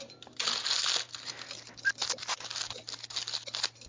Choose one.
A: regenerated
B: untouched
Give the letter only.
B